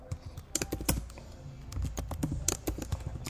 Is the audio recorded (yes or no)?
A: yes